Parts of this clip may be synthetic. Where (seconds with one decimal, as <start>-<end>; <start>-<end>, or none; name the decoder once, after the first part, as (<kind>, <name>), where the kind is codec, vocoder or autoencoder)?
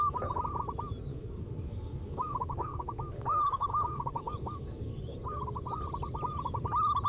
1.1-5.0 (codec, DAC)